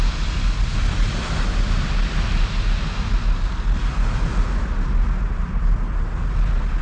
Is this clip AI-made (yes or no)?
no